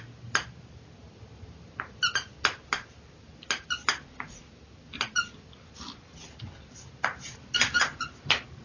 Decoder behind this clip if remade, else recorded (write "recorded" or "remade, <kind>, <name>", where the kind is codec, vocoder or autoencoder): recorded